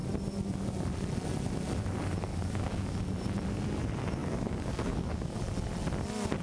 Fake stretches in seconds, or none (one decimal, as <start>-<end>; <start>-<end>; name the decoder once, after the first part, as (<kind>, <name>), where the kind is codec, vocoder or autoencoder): 2.3-3.0 (codec, DAC); 4.2-5.4